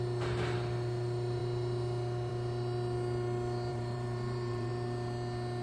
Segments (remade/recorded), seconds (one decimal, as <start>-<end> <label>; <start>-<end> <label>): 0.0-3.7 recorded; 3.7-4.7 remade; 4.7-5.6 recorded